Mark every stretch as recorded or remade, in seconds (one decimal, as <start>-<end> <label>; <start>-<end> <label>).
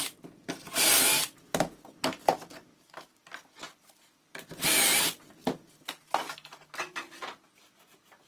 0.0-8.3 recorded